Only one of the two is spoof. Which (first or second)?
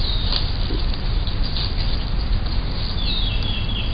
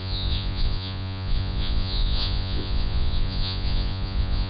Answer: second